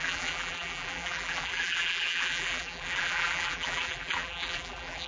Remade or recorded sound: remade